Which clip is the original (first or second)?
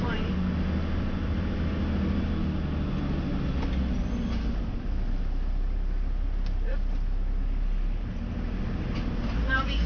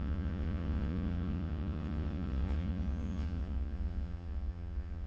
first